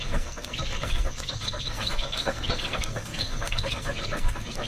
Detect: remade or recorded remade